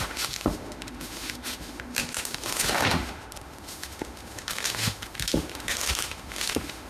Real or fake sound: fake